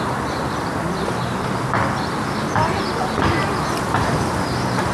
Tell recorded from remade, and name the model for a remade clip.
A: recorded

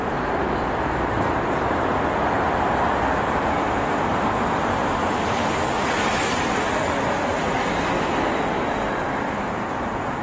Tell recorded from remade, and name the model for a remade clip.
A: remade, vocoder, BigVGAN v2